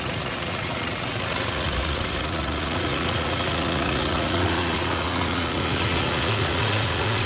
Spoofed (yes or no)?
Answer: yes